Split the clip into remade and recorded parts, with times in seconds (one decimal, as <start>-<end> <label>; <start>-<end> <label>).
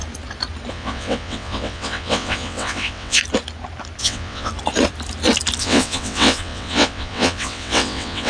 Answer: 0.0-0.7 recorded; 0.7-3.2 remade; 3.2-4.0 recorded; 4.0-4.5 remade; 4.5-5.6 recorded; 5.6-8.3 remade